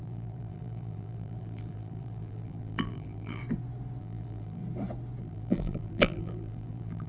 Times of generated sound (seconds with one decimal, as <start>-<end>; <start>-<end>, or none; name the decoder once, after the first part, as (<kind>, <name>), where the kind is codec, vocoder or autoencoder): 0.0-3.4 (vocoder, BigVGAN v2); 4.0-4.6; 5.2-7.1